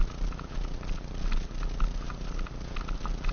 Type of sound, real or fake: real